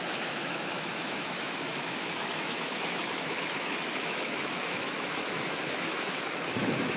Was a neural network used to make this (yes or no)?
yes